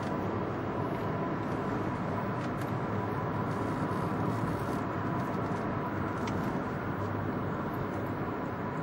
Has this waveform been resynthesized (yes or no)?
no